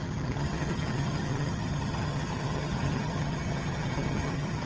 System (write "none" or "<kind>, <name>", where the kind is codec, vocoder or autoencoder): vocoder, HiFi-GAN